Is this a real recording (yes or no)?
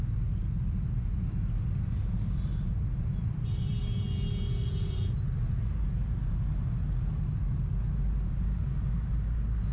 yes